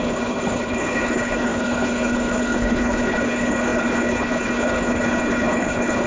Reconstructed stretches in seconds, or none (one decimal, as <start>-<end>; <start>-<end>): 0.0-6.1